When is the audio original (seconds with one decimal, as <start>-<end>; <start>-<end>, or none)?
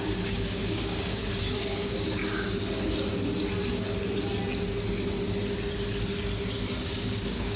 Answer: 2.2-6.8